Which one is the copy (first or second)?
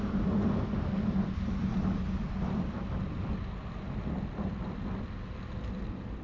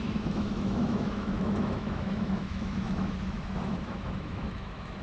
second